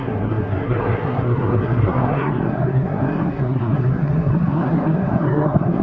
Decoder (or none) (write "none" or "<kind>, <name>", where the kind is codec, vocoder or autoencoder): codec, SNAC